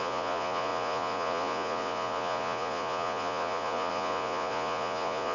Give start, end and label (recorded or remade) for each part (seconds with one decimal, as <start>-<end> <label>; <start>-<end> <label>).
0.0-5.3 remade